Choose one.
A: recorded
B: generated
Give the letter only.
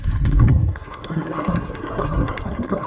B